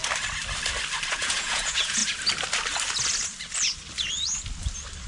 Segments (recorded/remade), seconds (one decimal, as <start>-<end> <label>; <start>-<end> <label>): 0.0-1.1 recorded; 1.1-2.0 remade; 2.0-5.1 recorded

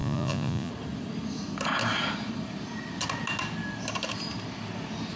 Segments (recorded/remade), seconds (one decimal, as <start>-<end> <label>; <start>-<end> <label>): 0.0-0.7 remade; 0.7-5.2 recorded

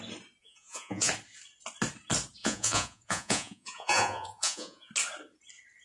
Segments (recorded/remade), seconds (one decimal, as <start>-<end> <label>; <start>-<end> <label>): 0.0-0.4 recorded; 0.4-1.1 remade; 1.1-2.4 recorded; 2.4-4.9 remade; 4.9-5.8 recorded

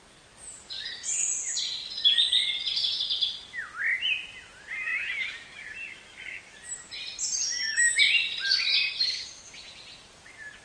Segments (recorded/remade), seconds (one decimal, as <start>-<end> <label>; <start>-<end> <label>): 0.0-10.6 recorded

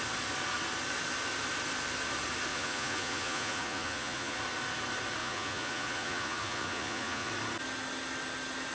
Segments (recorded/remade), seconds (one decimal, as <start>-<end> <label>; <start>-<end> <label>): 0.0-2.5 recorded; 2.5-4.4 remade; 4.4-5.2 recorded; 5.2-7.3 remade; 7.3-8.7 recorded

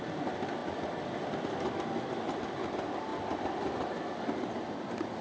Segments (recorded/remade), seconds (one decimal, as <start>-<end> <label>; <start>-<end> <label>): 0.0-5.2 recorded